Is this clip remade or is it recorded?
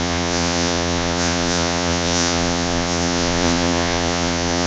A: remade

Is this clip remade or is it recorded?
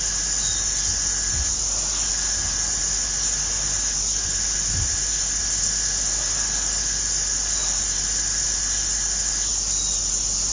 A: recorded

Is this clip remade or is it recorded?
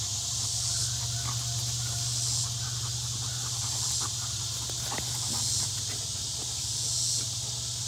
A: recorded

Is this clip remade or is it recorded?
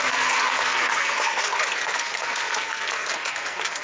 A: remade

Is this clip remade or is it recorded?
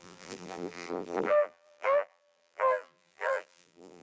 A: remade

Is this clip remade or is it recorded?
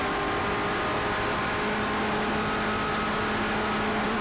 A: recorded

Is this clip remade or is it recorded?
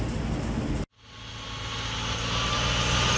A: recorded